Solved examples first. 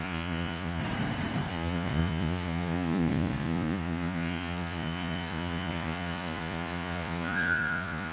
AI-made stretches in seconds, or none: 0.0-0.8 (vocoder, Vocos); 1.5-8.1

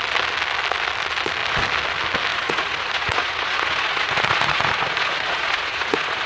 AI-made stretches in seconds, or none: 2.3-6.3 (vocoder, Vocos)

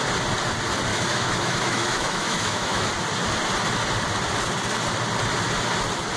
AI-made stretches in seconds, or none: 0.9-2.9 (autoencoder, DAC-VAE)

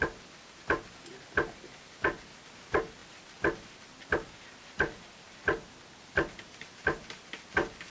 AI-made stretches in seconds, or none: none

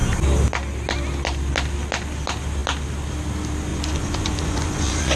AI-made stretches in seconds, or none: 3.7-5.2 (vocoder, Vocos)

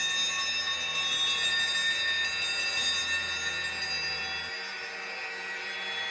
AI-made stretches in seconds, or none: none

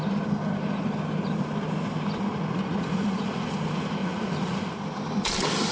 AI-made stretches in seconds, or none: 2.3-3.5 (vocoder, Vocos); 4.0-4.7

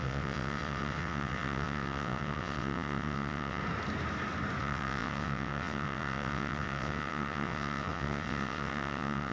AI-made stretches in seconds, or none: 0.0-3.6 (vocoder, WaveNeXt); 4.6-9.3